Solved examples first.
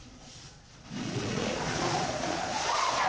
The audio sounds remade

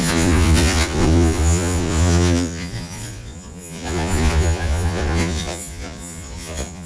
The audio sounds remade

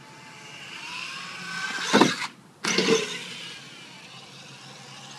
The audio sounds recorded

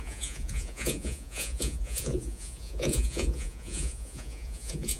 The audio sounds remade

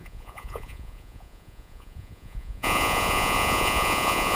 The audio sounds remade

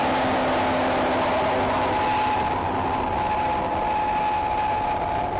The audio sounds recorded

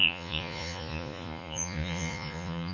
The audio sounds remade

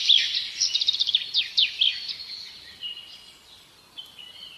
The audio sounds recorded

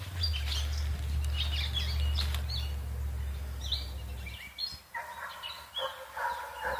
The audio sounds recorded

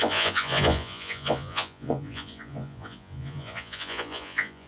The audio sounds remade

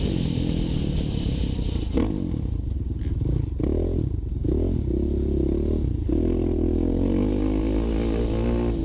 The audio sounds recorded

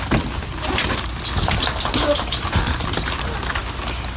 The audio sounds recorded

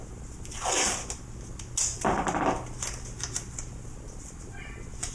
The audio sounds recorded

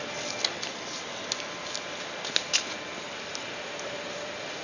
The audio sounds recorded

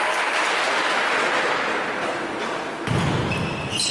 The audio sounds recorded